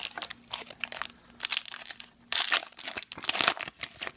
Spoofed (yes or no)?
no